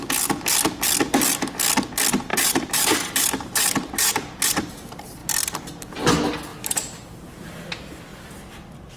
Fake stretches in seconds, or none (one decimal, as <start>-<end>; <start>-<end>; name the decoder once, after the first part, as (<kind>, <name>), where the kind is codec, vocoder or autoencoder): 2.3-4.7 (vocoder, BigVGAN v2); 6.5-7.4